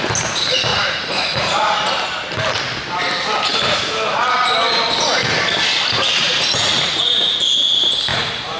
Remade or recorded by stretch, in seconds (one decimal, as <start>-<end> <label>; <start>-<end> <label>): 0.0-0.7 recorded; 0.7-1.8 remade; 1.8-6.2 recorded; 6.2-7.3 remade; 7.3-8.1 recorded; 8.1-8.6 remade